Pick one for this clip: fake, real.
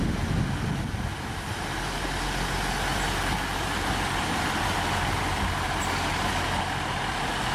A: real